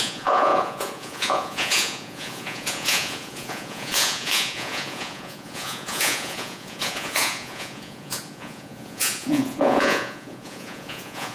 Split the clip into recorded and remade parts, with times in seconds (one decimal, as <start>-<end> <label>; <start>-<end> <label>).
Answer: 0.0-11.3 remade